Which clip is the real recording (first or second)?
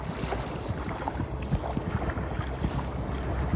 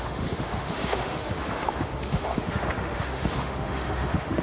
first